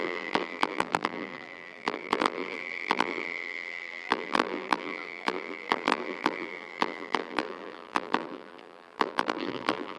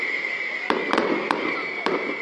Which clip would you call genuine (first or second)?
second